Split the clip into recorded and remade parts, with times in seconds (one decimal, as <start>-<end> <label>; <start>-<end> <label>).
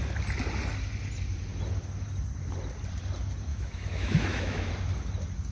0.0-3.5 recorded; 3.5-4.7 remade; 4.7-5.5 recorded